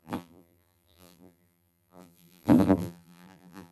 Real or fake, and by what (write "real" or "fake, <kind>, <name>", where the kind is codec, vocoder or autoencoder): fake, vocoder, BigVGAN v2